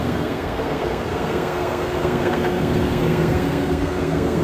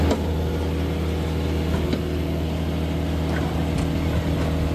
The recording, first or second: second